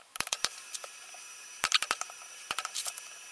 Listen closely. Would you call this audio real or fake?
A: fake